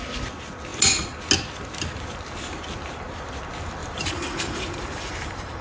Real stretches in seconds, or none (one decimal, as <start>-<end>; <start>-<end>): 0.0-3.8